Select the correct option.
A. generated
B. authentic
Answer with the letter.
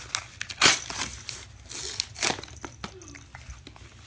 B